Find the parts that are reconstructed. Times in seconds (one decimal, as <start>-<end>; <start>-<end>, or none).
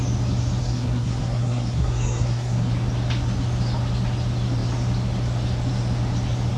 0.6-2.7